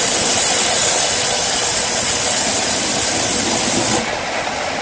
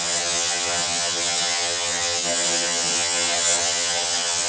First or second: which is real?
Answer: first